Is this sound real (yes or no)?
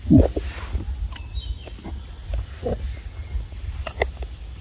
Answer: yes